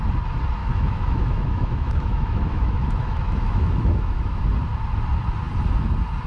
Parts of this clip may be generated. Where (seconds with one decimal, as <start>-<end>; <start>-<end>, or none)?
0.6-4.4